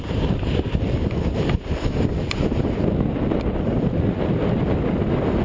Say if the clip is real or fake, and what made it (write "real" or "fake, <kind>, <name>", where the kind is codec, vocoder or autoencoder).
real